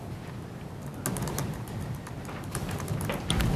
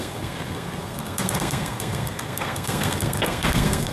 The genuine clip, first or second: first